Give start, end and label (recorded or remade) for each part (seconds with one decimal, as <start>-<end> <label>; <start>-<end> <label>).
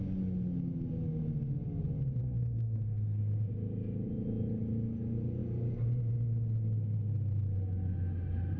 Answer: 0.0-2.2 recorded; 2.2-3.2 remade; 3.2-8.6 recorded